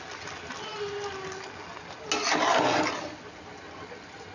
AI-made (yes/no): no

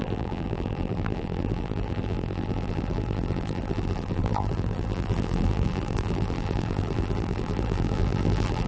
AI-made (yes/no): yes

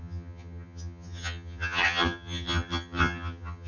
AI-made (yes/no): yes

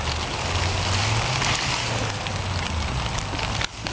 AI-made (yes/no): no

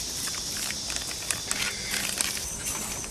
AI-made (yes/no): no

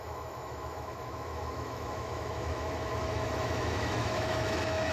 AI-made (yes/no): yes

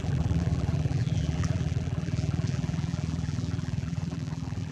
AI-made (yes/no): yes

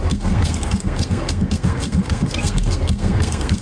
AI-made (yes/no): yes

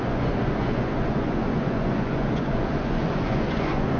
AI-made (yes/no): yes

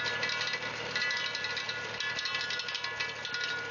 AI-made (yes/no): no